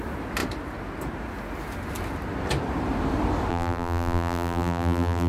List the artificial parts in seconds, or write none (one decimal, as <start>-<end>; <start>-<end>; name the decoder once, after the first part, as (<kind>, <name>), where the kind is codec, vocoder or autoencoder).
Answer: 3.5-5.3 (vocoder, BigVGAN v2)